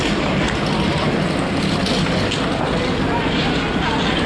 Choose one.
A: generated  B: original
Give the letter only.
B